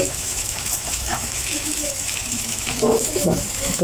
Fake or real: fake